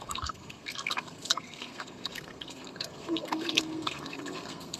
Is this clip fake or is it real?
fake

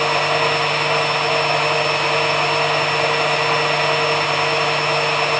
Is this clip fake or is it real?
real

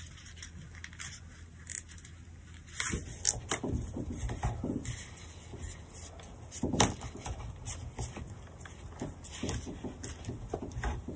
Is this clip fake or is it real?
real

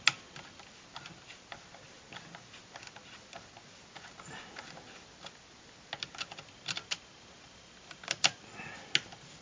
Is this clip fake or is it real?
real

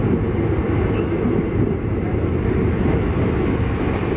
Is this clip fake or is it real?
real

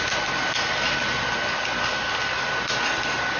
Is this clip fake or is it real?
real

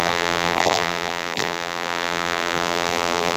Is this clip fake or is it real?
fake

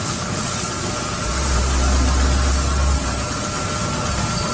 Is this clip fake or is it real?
real